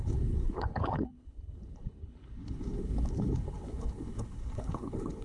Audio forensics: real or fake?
fake